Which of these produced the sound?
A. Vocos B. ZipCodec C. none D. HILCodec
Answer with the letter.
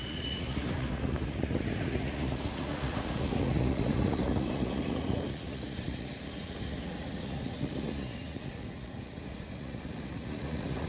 A